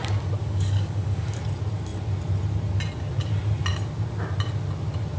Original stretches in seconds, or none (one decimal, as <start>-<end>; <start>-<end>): 0.0-0.4; 1.4-5.2